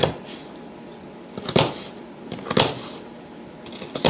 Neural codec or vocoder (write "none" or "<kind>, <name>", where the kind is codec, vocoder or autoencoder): none